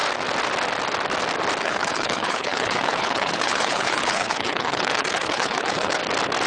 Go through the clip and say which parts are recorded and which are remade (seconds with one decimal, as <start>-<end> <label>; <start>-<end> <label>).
0.0-1.6 recorded; 1.6-6.0 remade; 6.0-6.5 recorded